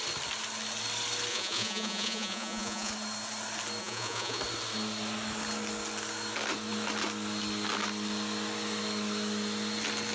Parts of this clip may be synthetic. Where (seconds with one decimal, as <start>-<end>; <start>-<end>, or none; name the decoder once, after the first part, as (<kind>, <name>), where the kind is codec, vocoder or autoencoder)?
1.3-2.9 (vocoder, Vocos); 3.8-4.4